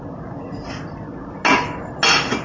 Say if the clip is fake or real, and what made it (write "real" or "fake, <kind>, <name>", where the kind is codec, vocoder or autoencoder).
real